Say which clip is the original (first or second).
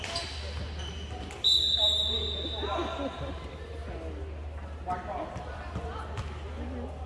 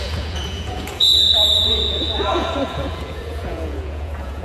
first